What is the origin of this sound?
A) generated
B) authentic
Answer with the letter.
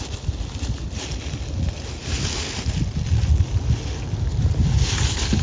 B